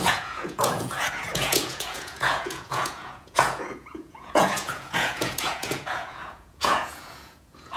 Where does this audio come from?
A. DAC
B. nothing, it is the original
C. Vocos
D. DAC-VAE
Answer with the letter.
C